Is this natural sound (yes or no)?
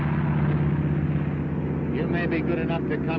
yes